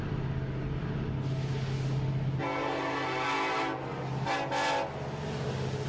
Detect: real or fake real